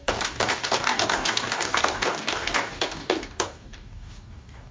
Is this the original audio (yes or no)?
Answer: no